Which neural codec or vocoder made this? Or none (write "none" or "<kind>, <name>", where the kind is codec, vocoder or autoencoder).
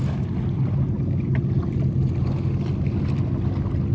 none